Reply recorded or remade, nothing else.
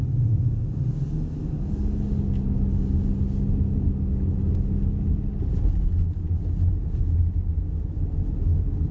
recorded